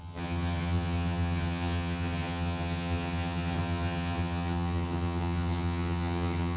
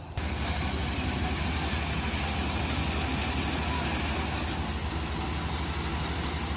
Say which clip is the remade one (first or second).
first